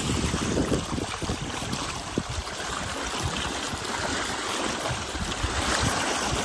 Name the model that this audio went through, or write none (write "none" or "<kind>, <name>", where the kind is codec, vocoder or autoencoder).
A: vocoder, BigVGAN v2